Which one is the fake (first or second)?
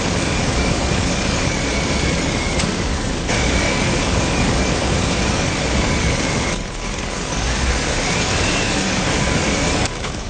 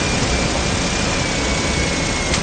first